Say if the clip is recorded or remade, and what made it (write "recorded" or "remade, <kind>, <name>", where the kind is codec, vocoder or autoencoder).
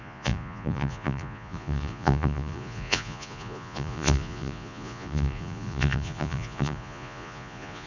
remade, vocoder, Vocos